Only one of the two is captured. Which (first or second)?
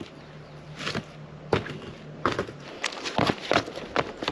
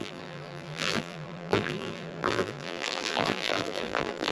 first